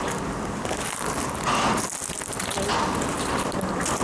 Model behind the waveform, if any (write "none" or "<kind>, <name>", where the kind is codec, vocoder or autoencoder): none